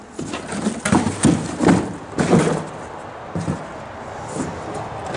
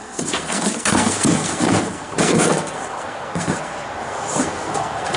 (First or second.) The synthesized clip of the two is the second